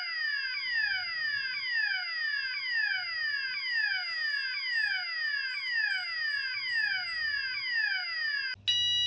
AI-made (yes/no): no